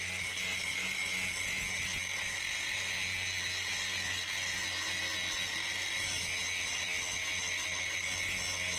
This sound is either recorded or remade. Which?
recorded